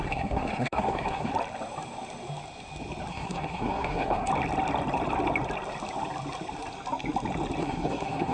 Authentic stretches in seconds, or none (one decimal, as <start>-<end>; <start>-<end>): 1.3-3.1; 4.3-7.6